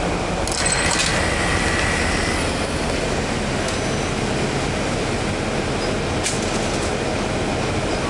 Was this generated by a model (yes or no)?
no